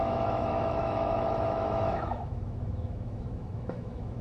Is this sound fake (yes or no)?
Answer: yes